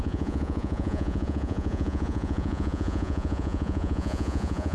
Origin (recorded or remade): remade